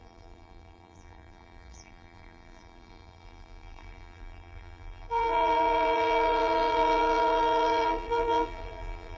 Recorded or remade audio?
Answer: remade